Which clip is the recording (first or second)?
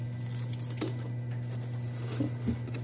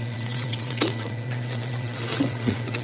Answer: first